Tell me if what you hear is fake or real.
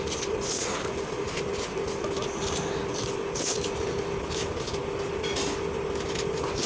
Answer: real